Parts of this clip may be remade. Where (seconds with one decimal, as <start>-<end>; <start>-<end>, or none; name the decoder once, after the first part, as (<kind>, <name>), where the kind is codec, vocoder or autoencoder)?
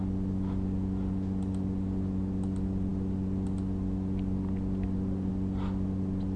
none